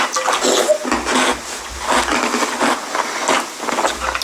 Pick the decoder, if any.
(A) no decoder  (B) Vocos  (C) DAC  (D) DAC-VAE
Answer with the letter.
A